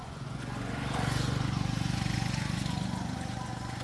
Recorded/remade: remade